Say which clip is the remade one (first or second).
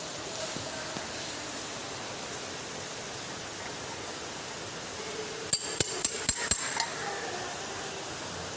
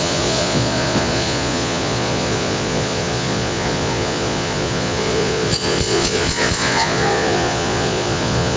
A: second